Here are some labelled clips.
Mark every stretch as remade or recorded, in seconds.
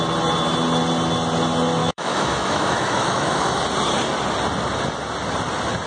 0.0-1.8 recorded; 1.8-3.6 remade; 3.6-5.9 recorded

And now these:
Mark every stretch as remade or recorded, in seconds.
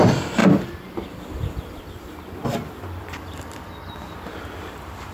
0.0-5.1 recorded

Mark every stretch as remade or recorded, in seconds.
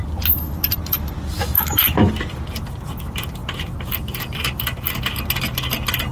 0.0-1.4 recorded; 1.4-2.1 remade; 2.1-6.1 recorded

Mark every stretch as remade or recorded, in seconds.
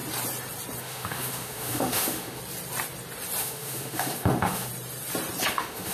0.0-0.8 recorded; 0.8-2.4 remade; 2.4-3.4 recorded; 3.4-4.7 remade; 4.7-5.5 recorded; 5.5-5.9 remade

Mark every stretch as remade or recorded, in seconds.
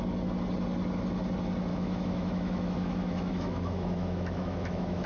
0.0-1.7 recorded; 1.7-5.1 remade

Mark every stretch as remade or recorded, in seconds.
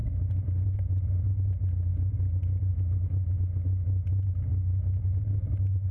0.0-4.5 recorded; 4.5-5.0 remade; 5.0-5.9 recorded